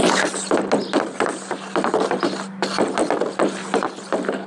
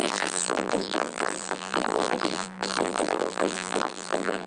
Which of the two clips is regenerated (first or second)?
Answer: second